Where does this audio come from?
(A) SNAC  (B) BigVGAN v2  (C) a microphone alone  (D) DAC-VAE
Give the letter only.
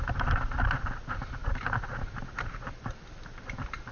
C